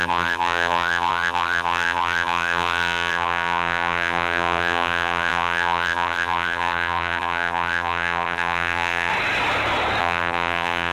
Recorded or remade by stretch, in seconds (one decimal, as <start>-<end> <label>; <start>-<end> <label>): 0.0-9.1 remade; 9.1-10.0 recorded; 10.0-10.9 remade